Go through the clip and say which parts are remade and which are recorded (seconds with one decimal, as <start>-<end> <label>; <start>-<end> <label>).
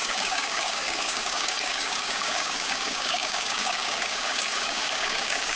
0.0-5.5 remade